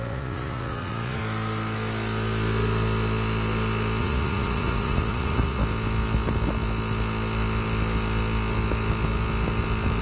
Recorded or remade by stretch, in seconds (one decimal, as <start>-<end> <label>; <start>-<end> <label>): 0.0-1.2 remade; 1.2-4.0 recorded; 4.0-5.6 remade; 5.6-10.0 recorded